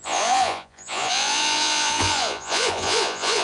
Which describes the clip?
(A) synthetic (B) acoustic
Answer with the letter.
A